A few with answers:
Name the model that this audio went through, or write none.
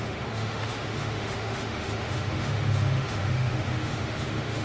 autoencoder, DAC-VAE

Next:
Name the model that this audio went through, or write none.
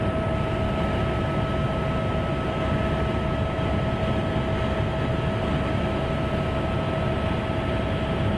none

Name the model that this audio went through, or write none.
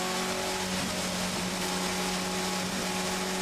none